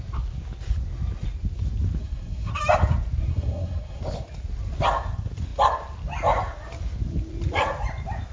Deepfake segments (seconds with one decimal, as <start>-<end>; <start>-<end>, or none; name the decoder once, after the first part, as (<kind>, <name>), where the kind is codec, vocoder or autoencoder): 2.0-2.5 (codec, SNAC); 3.3-4.0